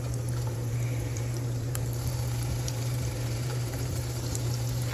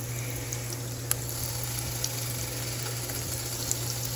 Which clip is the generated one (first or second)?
first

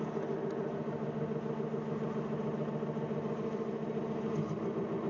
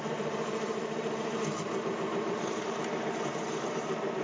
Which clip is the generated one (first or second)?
second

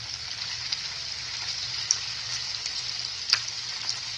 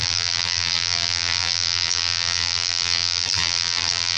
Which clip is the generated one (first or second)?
second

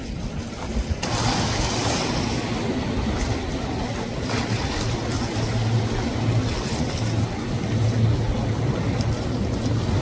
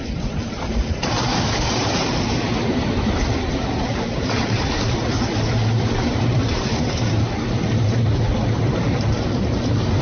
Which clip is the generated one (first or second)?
second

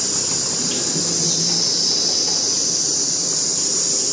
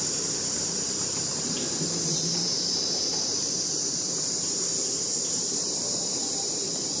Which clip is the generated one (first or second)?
second